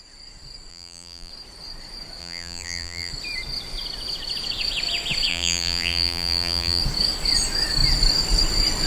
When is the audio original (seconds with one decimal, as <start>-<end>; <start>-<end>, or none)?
0.0-0.7; 1.3-2.2; 3.1-5.3; 6.8-8.9